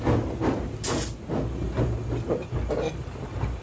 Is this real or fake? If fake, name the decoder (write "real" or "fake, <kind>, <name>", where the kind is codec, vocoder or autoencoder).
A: real